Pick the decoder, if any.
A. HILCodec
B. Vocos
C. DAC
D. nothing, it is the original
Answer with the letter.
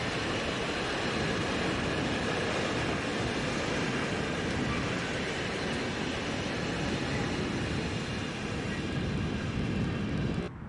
D